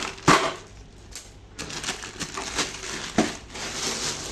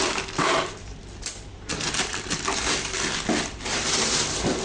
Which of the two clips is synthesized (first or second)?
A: second